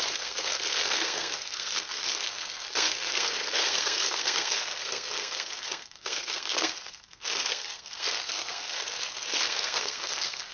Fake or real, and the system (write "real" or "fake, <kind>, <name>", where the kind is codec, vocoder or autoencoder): fake, codec, SNAC